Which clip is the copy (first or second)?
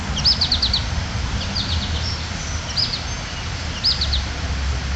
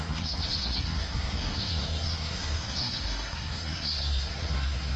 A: second